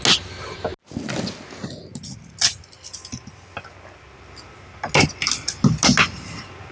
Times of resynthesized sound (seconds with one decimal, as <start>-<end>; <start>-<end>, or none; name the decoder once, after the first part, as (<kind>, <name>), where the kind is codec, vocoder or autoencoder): none